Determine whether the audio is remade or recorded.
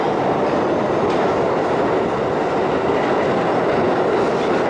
recorded